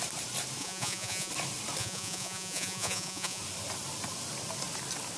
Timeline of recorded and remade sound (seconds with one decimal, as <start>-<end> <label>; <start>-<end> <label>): 0.0-0.6 recorded; 0.6-1.3 remade; 1.3-1.8 recorded; 1.8-3.4 remade; 3.4-5.2 recorded